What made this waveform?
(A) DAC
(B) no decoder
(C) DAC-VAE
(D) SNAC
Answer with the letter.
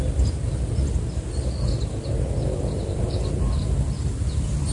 B